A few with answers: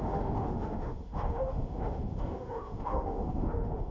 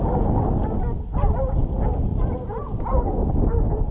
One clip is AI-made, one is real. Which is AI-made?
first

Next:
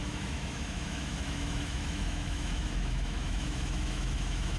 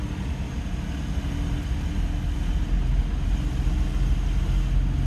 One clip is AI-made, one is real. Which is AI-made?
first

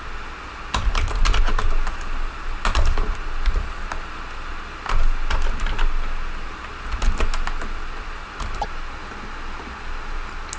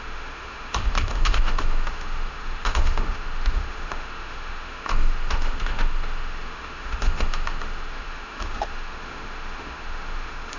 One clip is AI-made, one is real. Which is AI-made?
second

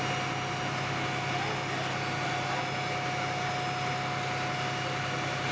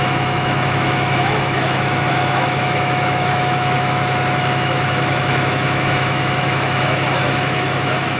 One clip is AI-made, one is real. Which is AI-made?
second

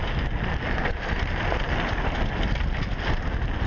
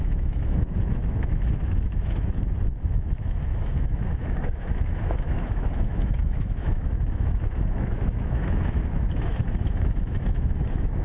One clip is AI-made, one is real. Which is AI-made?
second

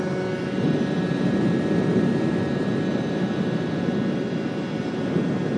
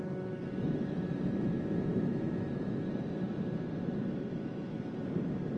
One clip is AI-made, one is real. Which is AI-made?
second